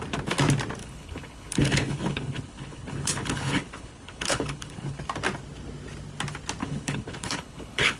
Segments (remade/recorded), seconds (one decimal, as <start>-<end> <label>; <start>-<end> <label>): 0.0-0.8 recorded; 0.8-5.0 remade; 5.0-6.6 recorded; 6.6-8.0 remade